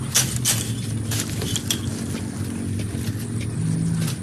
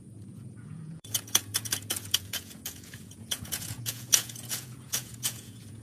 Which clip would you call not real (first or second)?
second